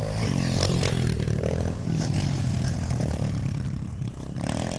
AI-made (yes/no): yes